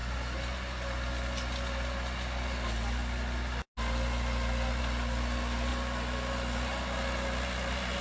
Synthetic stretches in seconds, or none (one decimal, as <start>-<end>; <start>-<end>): none